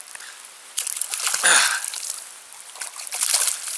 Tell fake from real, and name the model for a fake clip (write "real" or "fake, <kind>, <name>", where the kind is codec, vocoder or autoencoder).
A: real